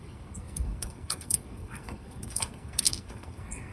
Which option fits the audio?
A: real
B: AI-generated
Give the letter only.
B